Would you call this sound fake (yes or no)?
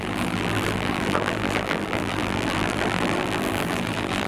yes